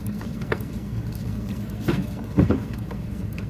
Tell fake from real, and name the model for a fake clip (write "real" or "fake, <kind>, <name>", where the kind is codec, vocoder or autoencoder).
fake, codec, SNAC